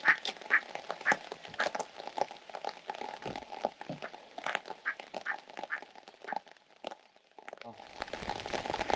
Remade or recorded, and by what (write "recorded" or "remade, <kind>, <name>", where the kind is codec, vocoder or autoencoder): recorded